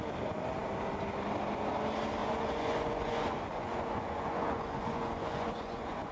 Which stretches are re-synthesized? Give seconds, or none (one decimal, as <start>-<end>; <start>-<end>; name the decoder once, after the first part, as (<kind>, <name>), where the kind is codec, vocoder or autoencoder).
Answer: 2.2-6.1 (vocoder, Vocos)